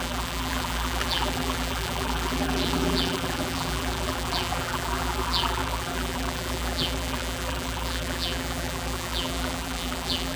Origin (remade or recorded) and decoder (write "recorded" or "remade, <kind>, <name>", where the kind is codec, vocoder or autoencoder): remade, vocoder, BigVGAN v2